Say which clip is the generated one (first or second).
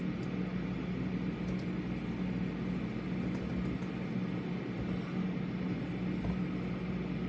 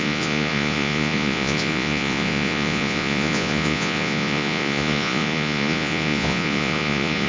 second